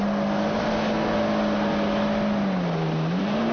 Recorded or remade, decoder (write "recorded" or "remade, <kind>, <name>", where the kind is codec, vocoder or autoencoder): recorded